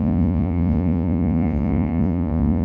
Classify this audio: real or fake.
fake